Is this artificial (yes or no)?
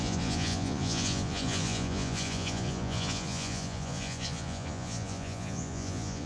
yes